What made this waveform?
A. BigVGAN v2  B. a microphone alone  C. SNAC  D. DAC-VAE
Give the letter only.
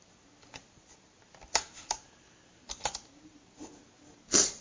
B